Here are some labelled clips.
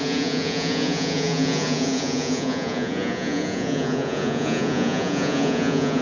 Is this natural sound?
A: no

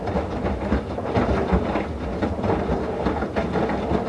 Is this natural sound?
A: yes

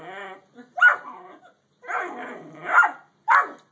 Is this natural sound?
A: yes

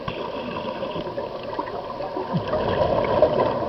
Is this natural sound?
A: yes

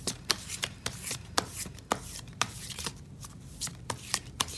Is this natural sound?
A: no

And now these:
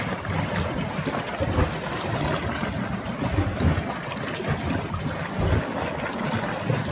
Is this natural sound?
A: yes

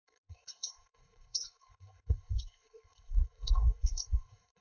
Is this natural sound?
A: no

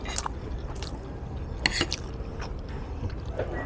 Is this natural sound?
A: yes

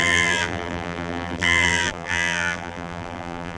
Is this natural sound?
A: no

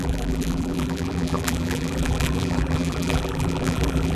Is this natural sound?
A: no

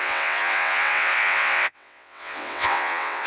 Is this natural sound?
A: no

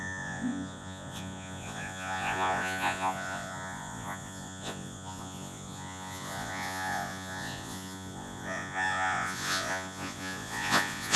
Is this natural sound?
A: no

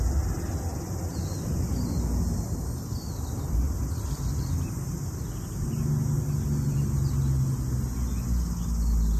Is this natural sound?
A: yes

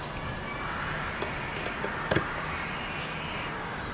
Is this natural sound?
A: yes